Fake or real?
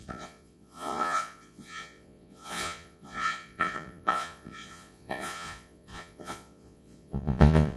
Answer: fake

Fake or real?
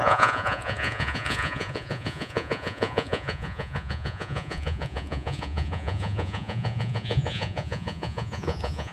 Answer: fake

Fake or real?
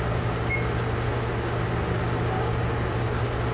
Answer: real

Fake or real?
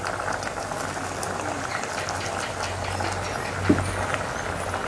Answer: real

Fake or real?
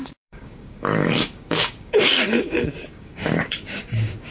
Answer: fake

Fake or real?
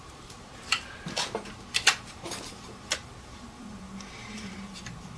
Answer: fake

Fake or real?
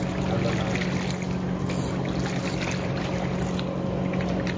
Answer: real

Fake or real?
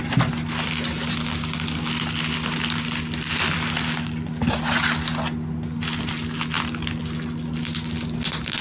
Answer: real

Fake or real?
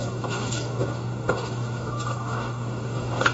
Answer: fake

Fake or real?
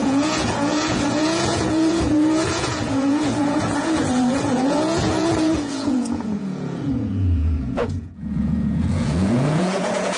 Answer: fake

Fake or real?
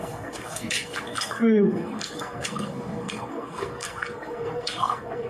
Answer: fake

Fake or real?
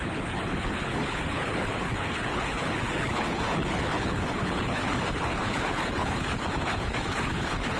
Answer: fake